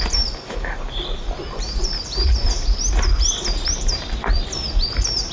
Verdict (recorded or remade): recorded